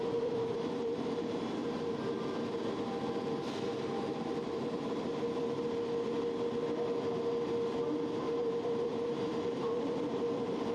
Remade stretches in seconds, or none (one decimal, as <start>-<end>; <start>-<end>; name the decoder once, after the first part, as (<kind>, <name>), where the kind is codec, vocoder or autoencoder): 0.0-1.6 (vocoder, BigVGAN v2); 3.8-5.1; 8.2-10.7